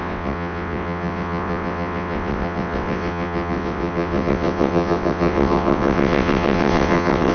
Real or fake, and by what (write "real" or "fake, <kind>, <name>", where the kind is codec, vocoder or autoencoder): fake, vocoder, WaveNeXt